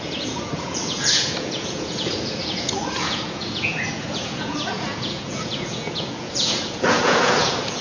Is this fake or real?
fake